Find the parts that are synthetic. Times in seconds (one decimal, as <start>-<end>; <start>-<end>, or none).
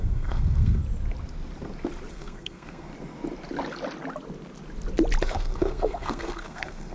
0.0-0.8; 2.1-2.9; 5.2-6.9